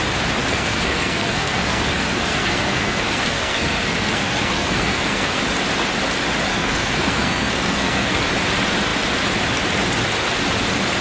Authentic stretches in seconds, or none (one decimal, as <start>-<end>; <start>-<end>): 0.0-0.4; 5.4-6.5; 8.2-11.0